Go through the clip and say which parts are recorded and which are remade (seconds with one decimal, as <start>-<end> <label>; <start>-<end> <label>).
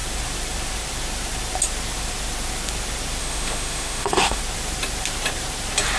0.0-3.2 recorded; 3.2-4.4 remade; 4.4-6.0 recorded